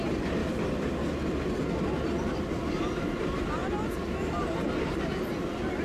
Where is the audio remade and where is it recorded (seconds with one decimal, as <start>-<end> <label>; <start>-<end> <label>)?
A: 0.0-5.8 recorded